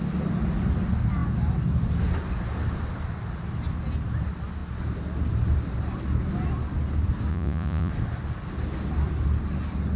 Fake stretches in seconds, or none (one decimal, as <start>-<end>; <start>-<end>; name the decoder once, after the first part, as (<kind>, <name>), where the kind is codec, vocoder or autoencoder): 7.3-7.9 (vocoder, Vocos)